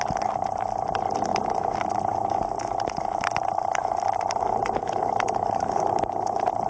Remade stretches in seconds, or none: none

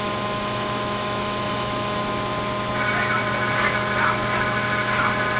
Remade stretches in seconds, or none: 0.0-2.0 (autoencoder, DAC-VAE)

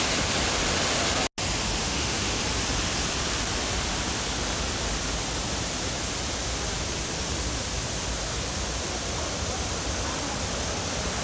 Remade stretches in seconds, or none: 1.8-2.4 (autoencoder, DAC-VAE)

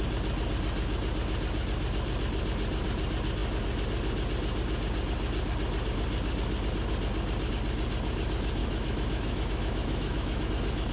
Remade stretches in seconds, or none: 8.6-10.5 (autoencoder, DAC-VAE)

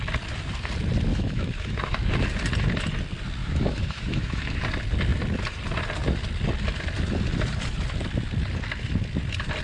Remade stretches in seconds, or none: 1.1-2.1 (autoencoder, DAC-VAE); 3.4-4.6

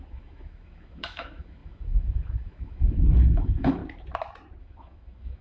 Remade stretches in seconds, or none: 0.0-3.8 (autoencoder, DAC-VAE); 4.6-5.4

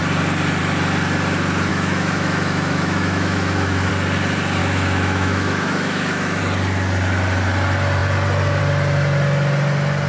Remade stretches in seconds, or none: 1.7-3.9 (autoencoder, DAC-VAE); 4.6-6.4

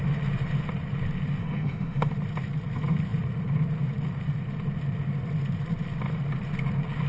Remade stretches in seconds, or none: 1.4-2.1 (autoencoder, DAC-VAE)